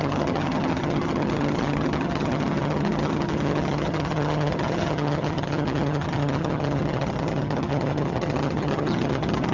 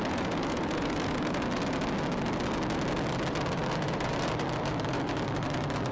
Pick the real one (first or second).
second